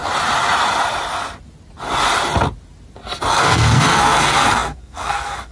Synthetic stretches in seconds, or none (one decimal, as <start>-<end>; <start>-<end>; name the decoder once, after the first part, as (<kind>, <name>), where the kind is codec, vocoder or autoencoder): 3.3-5.5 (codec, SNAC)